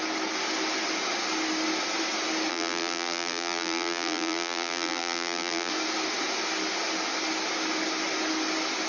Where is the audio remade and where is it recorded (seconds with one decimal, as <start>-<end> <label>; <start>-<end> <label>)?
0.0-2.5 recorded; 2.5-5.7 remade; 5.7-8.9 recorded